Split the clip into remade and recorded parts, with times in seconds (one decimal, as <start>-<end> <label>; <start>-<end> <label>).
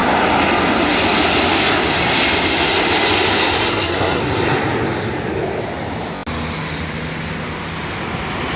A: 0.0-3.7 recorded; 3.7-4.2 remade; 4.2-8.6 recorded